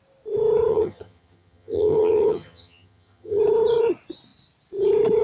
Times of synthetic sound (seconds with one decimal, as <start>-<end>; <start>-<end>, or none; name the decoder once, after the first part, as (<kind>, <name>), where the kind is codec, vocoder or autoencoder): 0.7-3.4 (vocoder, HiFi-GAN)